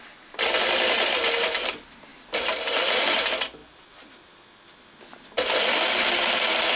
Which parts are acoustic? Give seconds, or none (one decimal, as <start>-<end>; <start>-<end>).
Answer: 0.0-6.8